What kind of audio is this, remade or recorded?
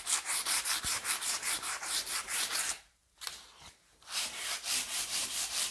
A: remade